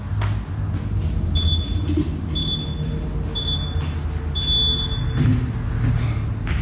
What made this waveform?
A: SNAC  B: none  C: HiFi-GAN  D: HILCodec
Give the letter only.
B